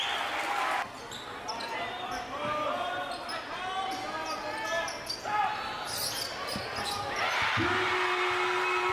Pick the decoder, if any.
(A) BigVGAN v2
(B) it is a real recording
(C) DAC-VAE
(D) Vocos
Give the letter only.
B